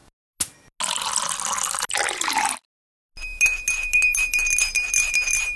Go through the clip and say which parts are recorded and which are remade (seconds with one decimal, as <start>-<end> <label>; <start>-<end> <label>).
0.0-5.6 recorded